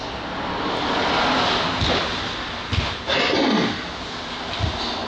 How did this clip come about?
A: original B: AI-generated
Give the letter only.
A